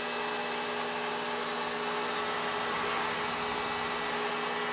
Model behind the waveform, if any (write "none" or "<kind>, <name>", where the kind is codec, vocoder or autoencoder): none